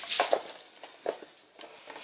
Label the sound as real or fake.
real